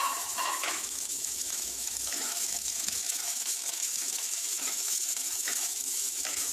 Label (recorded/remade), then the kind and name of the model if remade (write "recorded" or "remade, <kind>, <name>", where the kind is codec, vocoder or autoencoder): remade, autoencoder, DAC-VAE